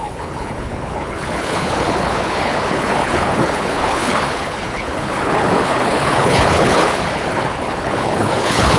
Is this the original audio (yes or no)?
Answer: no